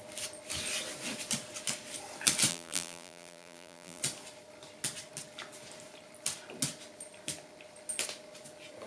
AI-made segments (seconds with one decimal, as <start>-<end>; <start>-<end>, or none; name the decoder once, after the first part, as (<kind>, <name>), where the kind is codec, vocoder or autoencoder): 2.5-4.0 (vocoder, BigVGAN v2)